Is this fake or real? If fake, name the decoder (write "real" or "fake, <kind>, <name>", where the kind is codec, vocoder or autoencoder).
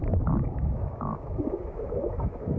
fake, autoencoder, DAC-VAE